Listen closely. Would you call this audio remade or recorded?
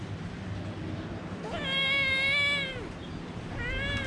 recorded